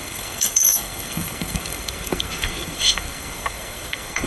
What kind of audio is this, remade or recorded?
remade